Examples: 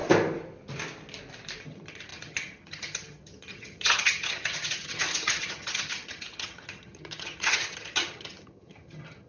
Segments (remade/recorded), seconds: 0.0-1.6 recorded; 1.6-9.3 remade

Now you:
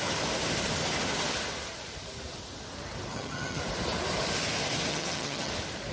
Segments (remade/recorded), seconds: 0.0-3.1 recorded; 3.1-3.6 remade; 3.6-4.9 recorded; 4.9-5.5 remade; 5.5-5.9 recorded

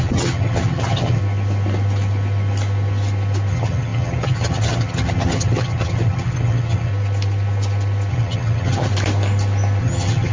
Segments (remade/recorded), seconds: 0.0-1.2 remade; 1.2-3.5 recorded; 3.5-6.9 remade; 6.9-8.1 recorded; 8.1-8.9 remade; 8.9-9.8 recorded; 9.8-10.3 remade

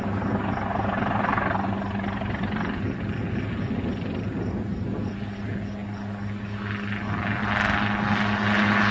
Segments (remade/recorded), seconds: 0.0-8.9 recorded

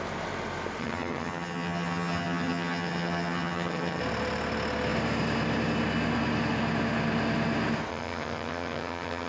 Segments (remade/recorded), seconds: 0.0-0.8 recorded; 0.8-4.0 remade; 4.0-7.9 recorded; 7.9-9.3 remade

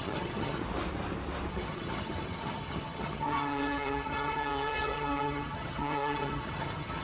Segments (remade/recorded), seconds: 0.0-0.6 remade; 0.6-1.5 recorded; 1.5-7.0 remade

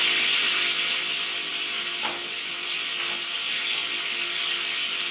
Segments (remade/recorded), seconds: 0.0-5.1 recorded